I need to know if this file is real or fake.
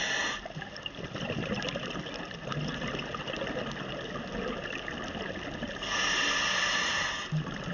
real